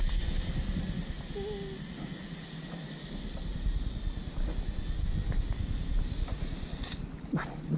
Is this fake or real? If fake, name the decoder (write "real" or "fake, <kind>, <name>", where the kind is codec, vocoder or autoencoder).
real